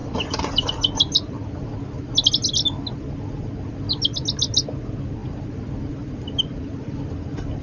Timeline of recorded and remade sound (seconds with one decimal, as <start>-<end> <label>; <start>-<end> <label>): 0.0-1.7 remade; 1.7-7.6 recorded